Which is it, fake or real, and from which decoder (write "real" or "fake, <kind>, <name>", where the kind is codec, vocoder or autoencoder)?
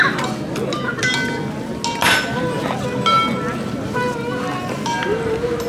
real